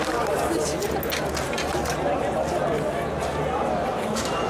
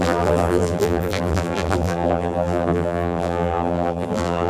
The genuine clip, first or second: first